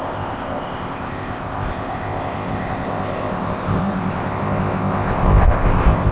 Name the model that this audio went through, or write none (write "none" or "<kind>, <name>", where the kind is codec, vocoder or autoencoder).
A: codec, ZipCodec